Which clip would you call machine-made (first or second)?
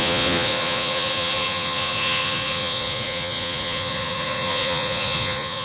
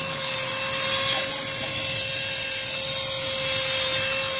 first